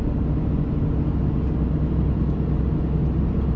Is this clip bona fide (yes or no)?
yes